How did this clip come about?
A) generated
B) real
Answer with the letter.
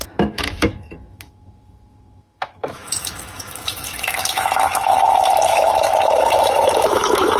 A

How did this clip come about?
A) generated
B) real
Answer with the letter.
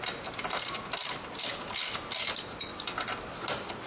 B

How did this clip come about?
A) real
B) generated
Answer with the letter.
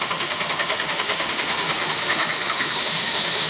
B